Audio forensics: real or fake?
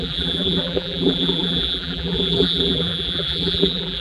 fake